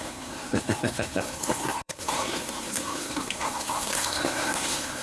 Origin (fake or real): fake